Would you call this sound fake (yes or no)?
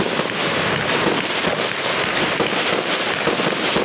no